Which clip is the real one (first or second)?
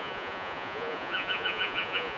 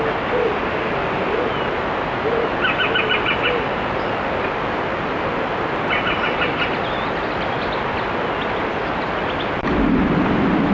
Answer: second